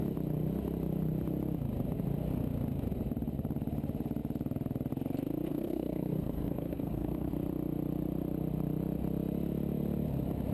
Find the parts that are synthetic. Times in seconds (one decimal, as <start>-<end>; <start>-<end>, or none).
5.5-7.3